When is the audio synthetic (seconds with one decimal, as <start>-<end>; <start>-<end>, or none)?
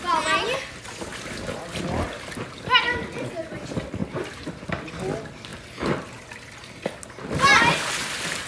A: 4.0-4.9; 5.5-6.2